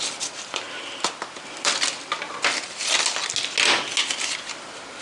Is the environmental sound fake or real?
real